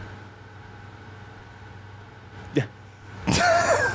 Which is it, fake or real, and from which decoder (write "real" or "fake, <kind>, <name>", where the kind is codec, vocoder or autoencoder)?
real